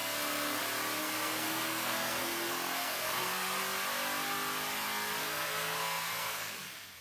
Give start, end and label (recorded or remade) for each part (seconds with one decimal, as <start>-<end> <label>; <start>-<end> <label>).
0.0-0.6 remade; 0.6-1.0 recorded; 1.0-3.6 remade; 3.6-5.2 recorded; 5.2-7.0 remade